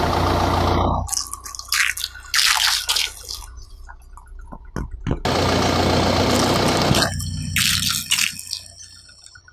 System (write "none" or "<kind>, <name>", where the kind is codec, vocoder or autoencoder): none